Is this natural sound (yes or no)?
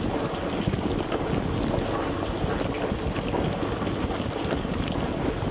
yes